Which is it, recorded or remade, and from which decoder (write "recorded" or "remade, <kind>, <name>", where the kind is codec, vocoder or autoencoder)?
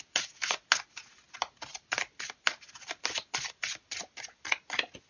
recorded